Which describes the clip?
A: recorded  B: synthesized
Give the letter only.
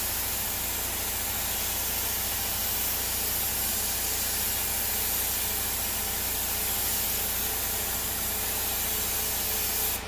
A